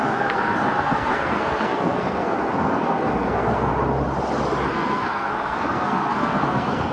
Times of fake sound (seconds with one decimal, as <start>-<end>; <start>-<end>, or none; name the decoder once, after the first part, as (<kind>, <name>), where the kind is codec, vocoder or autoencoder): 0.0-3.7 (codec, SNAC); 4.7-6.9